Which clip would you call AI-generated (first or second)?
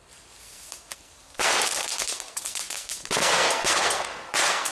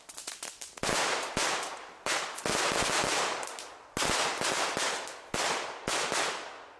first